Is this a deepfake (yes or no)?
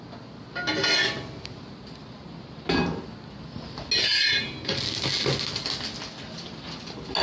no